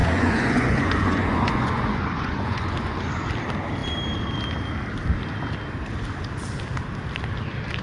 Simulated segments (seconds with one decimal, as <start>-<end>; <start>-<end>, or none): 0.0-3.0